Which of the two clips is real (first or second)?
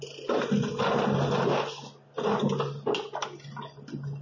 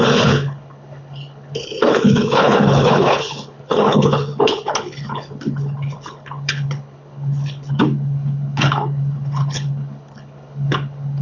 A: first